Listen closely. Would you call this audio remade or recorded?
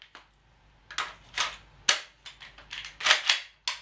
recorded